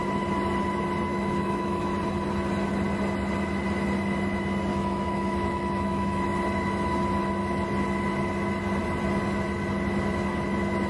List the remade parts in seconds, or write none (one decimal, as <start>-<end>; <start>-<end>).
1.1-1.9; 4.7-6.2